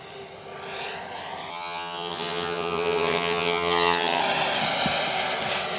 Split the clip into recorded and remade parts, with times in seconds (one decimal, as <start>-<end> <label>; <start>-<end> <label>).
0.0-1.5 recorded; 1.5-4.2 remade; 4.2-5.8 recorded